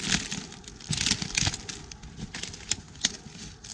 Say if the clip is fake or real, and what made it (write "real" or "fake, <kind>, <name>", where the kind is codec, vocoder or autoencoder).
real